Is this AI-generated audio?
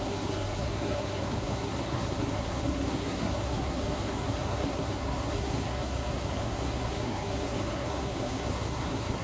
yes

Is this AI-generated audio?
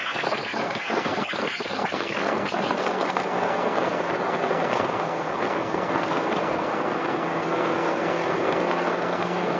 yes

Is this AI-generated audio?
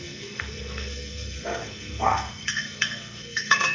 yes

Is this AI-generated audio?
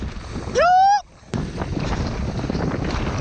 no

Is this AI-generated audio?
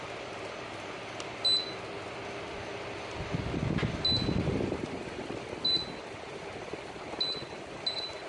no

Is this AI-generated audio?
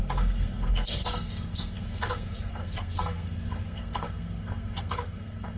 yes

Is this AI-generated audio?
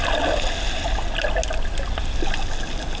no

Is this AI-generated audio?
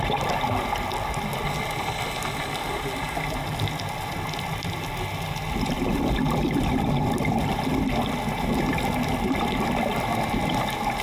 no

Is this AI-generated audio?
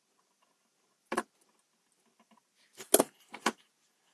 no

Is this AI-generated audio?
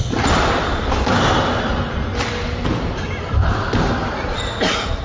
no